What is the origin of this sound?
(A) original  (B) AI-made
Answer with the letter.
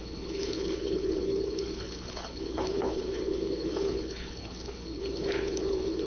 B